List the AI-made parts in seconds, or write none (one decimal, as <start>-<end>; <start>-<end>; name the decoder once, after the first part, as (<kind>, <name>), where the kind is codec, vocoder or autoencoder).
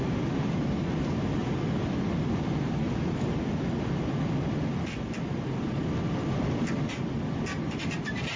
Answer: none